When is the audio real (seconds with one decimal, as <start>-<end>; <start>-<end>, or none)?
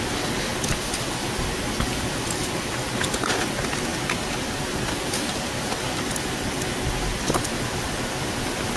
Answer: 0.0-0.5; 2.7-3.9; 6.3-8.8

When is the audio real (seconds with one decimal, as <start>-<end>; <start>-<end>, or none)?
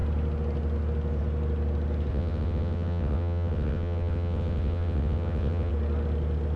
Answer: 0.0-2.1; 5.7-6.6